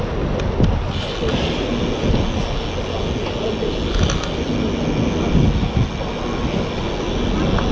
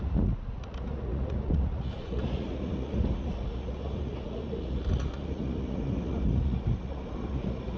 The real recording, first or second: first